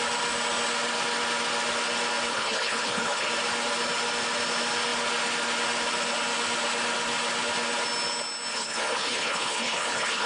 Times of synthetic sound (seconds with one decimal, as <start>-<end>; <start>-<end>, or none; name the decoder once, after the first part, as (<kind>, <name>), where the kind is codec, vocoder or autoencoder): 2.3-3.3 (codec, HILCodec); 8.5-10.3